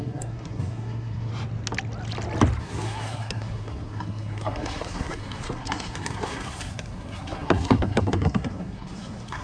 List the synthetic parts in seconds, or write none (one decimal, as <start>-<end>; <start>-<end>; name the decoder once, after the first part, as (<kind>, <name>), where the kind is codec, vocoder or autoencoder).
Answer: 0.0-1.3 (codec, SNAC); 2.6-9.4